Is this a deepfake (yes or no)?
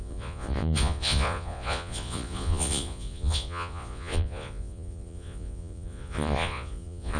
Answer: yes